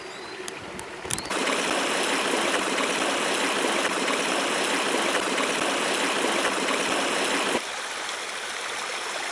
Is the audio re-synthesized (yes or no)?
no